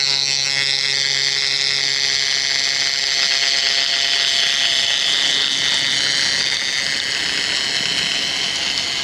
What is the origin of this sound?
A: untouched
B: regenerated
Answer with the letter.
A